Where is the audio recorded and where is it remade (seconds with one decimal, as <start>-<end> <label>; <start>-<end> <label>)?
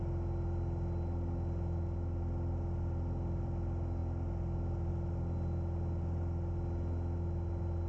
0.0-7.9 recorded